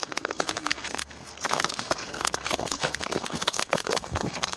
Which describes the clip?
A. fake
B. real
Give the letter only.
A